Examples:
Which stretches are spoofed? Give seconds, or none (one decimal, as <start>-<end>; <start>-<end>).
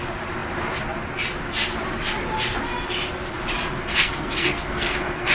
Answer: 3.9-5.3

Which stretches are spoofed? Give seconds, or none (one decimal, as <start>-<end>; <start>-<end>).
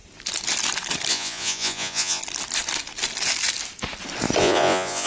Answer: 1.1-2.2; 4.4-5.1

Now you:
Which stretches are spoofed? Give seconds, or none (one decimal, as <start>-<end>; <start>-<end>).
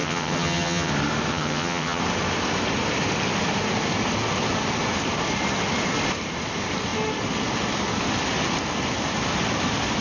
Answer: 0.0-0.9; 1.3-2.0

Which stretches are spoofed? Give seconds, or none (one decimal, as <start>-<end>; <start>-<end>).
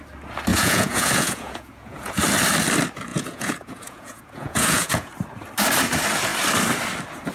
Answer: 0.5-2.2; 3.1-5.1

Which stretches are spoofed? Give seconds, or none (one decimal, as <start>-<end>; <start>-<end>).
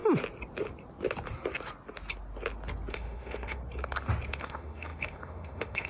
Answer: 2.9-3.6; 4.4-5.9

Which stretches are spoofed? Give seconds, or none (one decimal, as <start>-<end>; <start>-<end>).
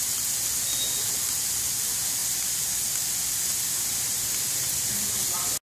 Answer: none